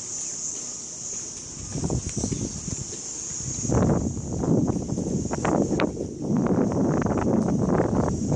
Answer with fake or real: real